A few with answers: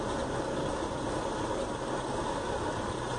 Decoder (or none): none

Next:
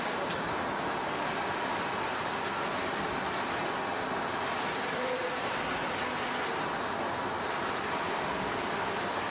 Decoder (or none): vocoder, BigVGAN v2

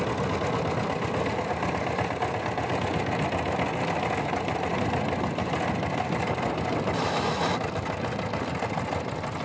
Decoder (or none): none